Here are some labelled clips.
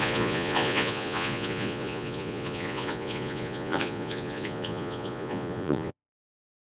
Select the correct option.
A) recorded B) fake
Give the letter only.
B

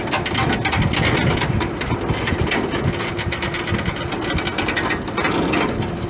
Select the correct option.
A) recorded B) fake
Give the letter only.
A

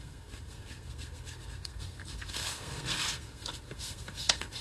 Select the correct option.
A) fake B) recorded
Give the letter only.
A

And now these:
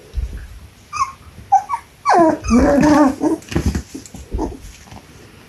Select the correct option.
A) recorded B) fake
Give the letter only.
A